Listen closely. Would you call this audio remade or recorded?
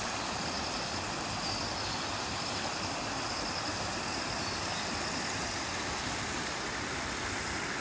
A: recorded